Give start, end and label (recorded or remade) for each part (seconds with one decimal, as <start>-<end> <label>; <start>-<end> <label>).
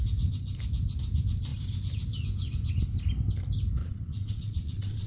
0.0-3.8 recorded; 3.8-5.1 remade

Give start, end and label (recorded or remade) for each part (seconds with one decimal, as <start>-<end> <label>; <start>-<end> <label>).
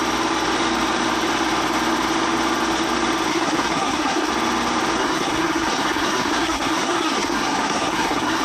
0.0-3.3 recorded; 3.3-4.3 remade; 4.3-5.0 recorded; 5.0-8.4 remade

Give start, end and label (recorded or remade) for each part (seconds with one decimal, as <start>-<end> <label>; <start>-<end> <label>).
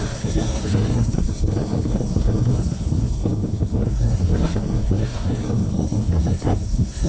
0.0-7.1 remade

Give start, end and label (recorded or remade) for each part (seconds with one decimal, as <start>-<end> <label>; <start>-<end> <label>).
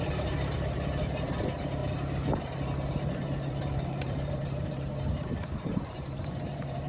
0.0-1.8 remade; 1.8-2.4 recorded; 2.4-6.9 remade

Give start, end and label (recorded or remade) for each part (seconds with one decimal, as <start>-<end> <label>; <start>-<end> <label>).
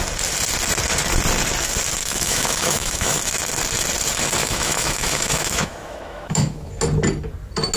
0.0-2.0 recorded; 2.0-3.2 remade; 3.2-4.4 recorded; 4.4-6.7 remade; 6.7-7.8 recorded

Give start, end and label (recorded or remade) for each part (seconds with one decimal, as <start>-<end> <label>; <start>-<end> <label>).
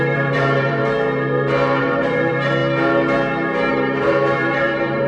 0.0-0.8 remade; 0.8-1.8 recorded; 1.8-2.6 remade; 2.6-3.7 recorded; 3.7-5.1 remade